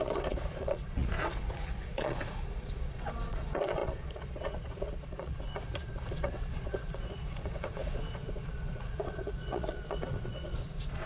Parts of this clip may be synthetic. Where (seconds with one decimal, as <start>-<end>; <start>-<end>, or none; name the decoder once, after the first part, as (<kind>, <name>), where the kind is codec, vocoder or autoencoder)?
0.0-11.1 (vocoder, Vocos)